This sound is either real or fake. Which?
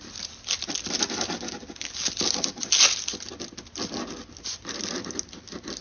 real